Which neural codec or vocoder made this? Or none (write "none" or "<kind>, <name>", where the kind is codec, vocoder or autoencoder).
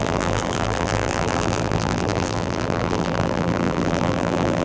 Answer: vocoder, BigVGAN v2